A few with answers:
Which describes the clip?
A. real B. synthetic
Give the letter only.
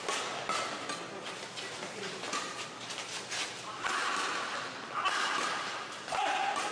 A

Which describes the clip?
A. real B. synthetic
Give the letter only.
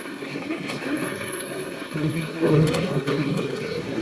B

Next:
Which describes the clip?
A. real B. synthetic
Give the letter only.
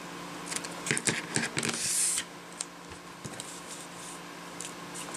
A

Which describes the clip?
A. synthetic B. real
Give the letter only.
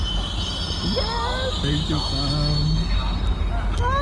B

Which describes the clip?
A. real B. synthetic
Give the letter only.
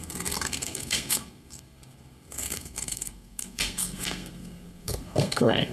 B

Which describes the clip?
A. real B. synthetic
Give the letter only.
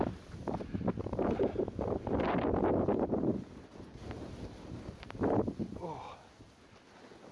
A